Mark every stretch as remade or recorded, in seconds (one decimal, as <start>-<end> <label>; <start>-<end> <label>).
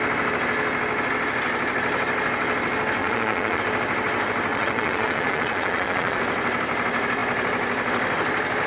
0.0-3.0 recorded; 3.0-3.6 remade; 3.6-4.5 recorded; 4.5-6.2 remade; 6.2-8.7 recorded